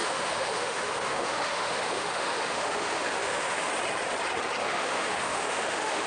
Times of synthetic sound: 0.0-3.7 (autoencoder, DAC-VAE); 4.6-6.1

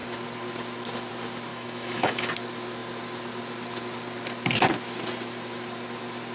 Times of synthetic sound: 1.5-2.3 (autoencoder, DAC-VAE)

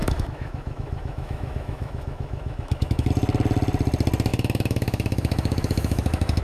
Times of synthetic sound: 0.0-3.1 (autoencoder, DAC-VAE); 4.3-6.4

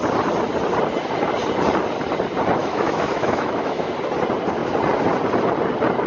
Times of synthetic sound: 2.6-3.9 (autoencoder, DAC-VAE)